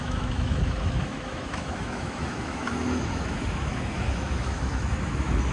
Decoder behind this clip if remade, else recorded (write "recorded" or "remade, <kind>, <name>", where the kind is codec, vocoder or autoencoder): remade, autoencoder, DAC-VAE